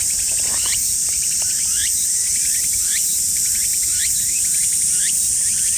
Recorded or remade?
remade